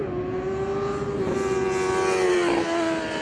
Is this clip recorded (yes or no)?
yes